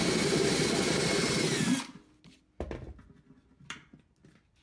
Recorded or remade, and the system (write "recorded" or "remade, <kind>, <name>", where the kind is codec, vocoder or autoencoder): recorded